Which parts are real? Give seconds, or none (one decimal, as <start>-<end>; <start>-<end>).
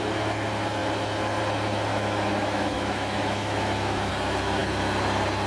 0.0-1.9; 4.1-5.5